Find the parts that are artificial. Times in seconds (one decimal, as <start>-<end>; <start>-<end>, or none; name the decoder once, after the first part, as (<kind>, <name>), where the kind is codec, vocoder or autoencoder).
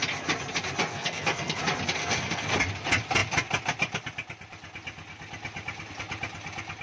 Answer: 0.9-1.6 (codec, SNAC); 2.0-2.5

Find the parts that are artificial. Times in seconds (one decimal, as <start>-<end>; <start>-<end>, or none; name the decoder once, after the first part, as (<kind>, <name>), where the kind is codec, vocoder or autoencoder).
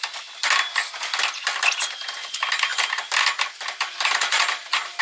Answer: none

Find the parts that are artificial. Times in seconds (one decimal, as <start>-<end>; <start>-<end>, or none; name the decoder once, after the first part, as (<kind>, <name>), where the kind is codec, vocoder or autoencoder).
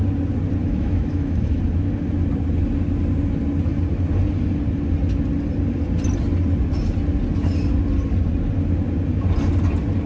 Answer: 0.6-1.6 (autoencoder, DAC-VAE)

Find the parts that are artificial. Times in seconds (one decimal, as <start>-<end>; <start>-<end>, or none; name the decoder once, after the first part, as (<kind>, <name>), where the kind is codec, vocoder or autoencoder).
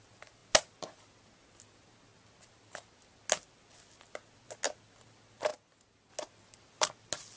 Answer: none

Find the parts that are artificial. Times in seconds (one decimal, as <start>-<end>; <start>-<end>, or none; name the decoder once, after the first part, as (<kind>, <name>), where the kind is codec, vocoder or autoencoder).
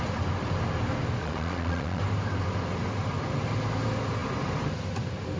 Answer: 1.2-2.0 (vocoder, Vocos)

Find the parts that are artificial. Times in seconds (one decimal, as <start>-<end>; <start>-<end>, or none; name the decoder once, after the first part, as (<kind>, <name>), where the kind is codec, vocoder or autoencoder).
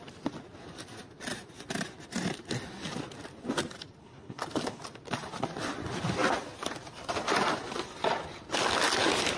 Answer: 4.0-4.8 (codec, HILCodec)